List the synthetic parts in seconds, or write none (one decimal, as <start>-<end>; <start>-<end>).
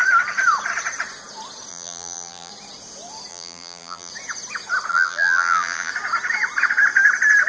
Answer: 1.7-2.5; 3.3-4.1; 4.9-5.9